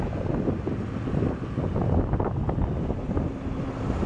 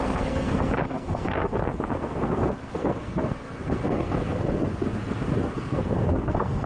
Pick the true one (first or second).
first